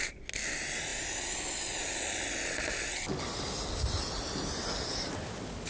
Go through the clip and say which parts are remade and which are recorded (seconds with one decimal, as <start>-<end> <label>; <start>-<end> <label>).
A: 0.0-5.7 recorded

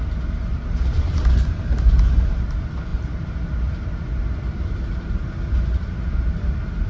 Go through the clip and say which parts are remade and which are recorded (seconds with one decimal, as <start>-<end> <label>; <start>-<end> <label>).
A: 0.0-6.9 recorded

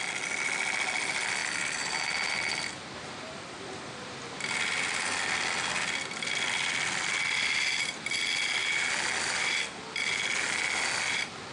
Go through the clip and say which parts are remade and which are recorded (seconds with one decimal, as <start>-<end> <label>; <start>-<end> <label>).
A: 0.0-11.5 recorded

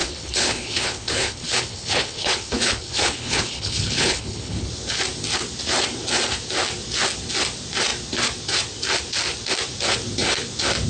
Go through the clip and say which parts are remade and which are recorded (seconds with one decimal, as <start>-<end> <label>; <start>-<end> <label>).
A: 0.0-4.7 remade; 4.7-10.9 recorded

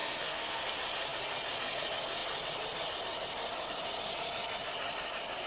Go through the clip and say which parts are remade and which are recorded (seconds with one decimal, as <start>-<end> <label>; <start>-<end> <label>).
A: 0.0-0.7 remade; 0.7-5.5 recorded